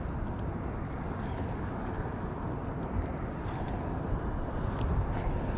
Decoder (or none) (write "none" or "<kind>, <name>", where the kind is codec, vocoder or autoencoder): none